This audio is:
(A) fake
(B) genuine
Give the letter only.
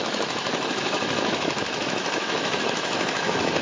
A